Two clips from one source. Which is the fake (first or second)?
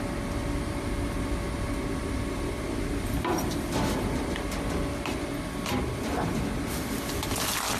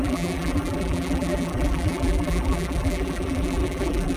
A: second